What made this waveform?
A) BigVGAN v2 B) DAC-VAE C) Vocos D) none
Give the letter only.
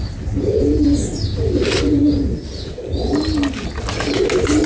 D